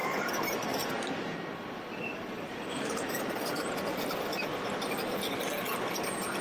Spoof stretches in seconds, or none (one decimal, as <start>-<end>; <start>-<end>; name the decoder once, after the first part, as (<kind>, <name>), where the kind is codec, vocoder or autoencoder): 0.0-0.9 (vocoder, BigVGAN v2); 2.1-3.2; 4.3-5.3